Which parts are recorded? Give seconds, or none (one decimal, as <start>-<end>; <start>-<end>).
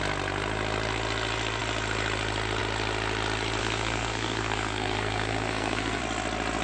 0.0-3.6; 6.0-6.6